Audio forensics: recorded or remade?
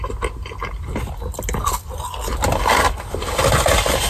recorded